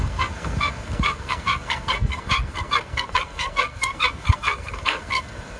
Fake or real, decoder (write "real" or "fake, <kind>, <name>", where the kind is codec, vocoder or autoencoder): fake, codec, SNAC